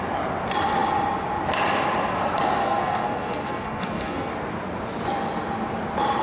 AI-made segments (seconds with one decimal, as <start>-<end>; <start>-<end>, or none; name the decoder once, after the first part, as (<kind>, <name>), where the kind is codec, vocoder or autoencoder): 2.6-4.3 (codec, SNAC)